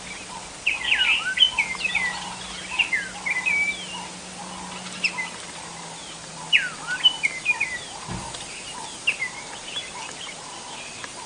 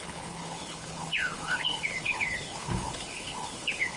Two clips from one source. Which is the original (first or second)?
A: first